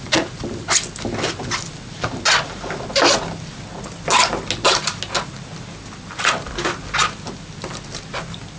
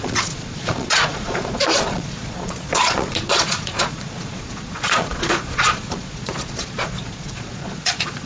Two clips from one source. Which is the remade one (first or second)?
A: second